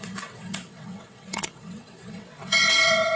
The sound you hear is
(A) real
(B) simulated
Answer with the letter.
B